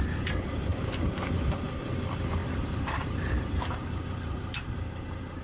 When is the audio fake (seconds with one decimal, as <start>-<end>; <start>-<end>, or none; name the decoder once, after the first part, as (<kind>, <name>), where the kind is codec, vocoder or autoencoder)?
2.4-5.4 (vocoder, BigVGAN v2)

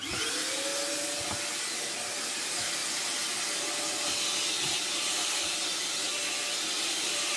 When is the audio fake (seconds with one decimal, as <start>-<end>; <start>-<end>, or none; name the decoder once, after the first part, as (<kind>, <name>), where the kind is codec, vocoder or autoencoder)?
none